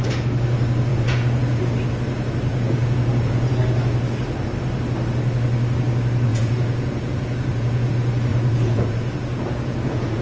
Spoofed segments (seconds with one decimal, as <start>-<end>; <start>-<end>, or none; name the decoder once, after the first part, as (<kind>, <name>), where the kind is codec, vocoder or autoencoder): 0.9-1.6 (vocoder, Vocos); 2.5-3.5; 6.3-7.9; 8.3-10.2